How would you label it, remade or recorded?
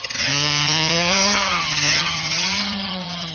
remade